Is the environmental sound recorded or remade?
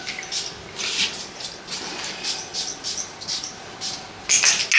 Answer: recorded